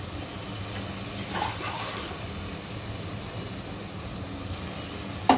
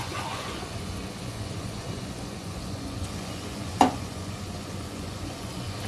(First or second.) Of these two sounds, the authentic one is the first